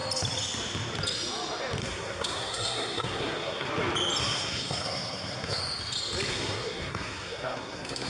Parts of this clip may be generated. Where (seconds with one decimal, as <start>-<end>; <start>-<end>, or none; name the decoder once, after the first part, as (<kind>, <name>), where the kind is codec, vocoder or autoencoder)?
1.8-3.7 (codec, SNAC); 4.2-5.6; 6.3-8.1